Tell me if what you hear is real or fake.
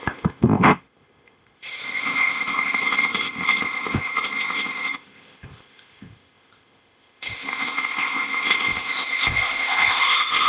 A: fake